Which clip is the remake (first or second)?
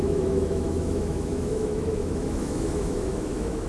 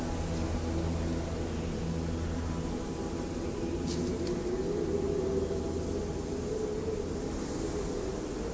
first